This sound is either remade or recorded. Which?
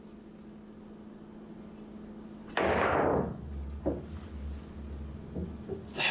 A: recorded